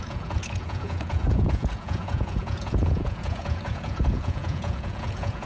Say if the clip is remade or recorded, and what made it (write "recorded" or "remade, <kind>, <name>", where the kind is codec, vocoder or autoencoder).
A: remade, vocoder, Vocos